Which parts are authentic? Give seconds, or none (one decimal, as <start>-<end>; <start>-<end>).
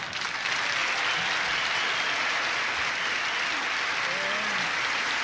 0.0-5.2